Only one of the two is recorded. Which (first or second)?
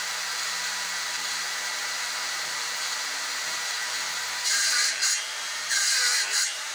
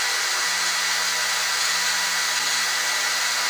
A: second